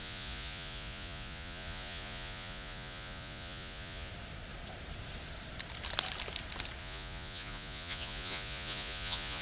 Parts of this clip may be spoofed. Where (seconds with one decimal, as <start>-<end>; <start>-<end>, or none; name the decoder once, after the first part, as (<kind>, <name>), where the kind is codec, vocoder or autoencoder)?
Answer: 0.0-4.1 (vocoder, Vocos); 6.8-9.4